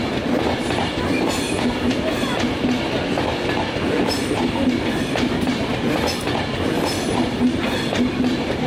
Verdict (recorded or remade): recorded